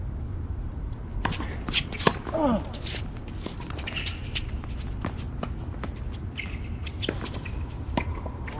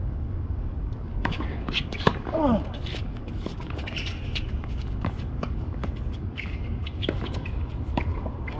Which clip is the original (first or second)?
first